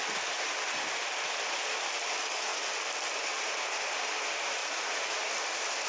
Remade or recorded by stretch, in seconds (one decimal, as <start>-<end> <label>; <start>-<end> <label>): 0.0-4.6 recorded; 4.6-5.2 remade; 5.2-5.9 recorded